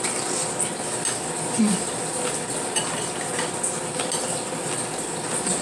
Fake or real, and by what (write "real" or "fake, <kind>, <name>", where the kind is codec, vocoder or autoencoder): real